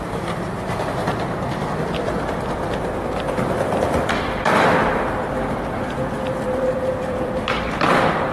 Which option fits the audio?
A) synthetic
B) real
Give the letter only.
A